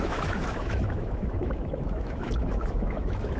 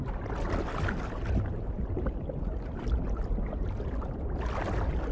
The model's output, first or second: first